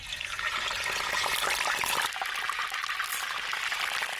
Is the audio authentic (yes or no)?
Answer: yes